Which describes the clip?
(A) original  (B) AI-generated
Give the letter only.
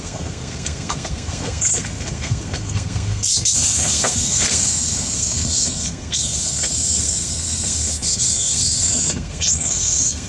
B